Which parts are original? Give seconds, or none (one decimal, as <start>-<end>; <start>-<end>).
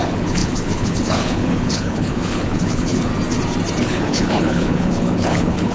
3.1-3.8